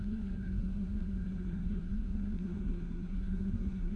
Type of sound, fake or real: fake